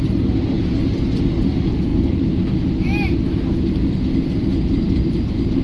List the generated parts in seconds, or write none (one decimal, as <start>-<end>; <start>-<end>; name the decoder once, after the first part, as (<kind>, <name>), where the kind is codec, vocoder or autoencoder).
none